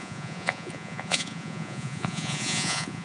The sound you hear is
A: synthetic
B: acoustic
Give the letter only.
A